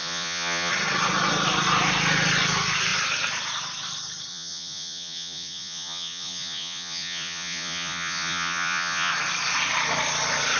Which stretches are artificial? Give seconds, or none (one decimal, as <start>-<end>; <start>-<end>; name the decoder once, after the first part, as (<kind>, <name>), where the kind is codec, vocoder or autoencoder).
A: 0.0-0.7 (vocoder, Vocos); 4.3-9.1